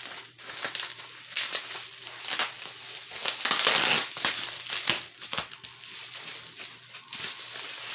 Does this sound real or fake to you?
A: real